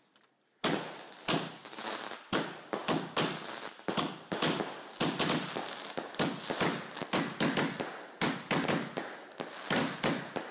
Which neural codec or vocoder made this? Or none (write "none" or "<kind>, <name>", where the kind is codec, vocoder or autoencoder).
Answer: none